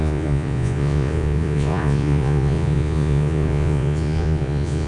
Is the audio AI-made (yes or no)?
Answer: yes